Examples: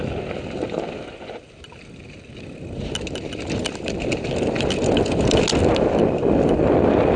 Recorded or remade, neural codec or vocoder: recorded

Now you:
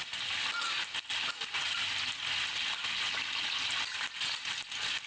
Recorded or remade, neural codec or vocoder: recorded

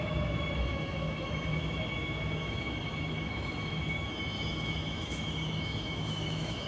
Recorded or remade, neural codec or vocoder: remade, autoencoder, DAC-VAE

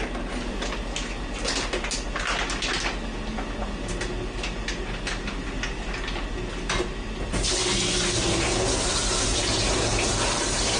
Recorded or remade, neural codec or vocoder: recorded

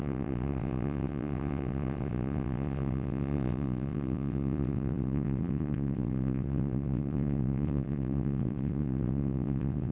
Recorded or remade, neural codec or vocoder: remade, vocoder, WaveNeXt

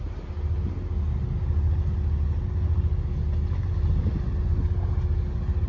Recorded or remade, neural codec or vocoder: recorded